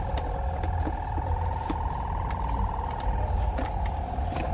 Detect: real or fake real